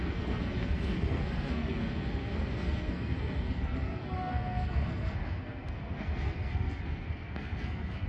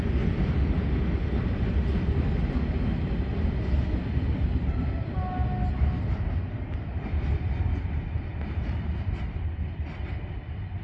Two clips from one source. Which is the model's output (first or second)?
first